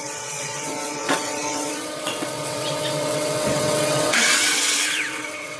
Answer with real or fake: fake